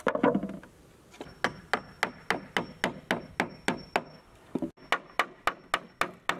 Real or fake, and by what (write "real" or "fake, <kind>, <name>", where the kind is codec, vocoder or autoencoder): real